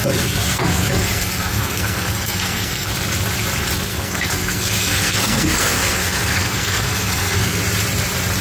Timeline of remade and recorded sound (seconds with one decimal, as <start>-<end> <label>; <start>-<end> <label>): 0.0-2.9 remade; 2.9-3.9 recorded; 3.9-7.6 remade; 7.6-8.4 recorded